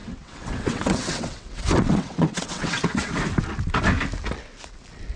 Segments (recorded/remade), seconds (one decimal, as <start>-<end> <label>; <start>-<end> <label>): 0.0-3.1 remade; 3.1-5.2 recorded